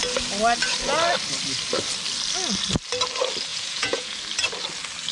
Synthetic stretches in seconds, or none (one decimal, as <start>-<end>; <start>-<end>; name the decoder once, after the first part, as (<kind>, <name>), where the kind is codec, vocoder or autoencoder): 3.5-4.2 (vocoder, Vocos)